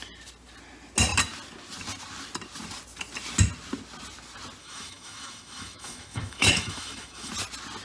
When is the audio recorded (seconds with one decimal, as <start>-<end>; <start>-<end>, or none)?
0.0-4.6; 7.3-7.8